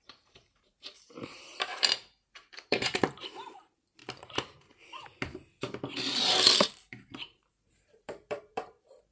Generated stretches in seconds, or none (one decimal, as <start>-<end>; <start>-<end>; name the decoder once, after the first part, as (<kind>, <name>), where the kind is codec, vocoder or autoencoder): 0.0-4.0 (vocoder, BigVGAN v2); 6.6-9.1